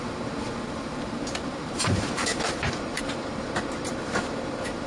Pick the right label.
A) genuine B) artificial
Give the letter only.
B